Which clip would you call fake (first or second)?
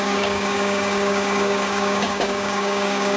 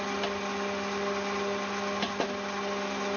first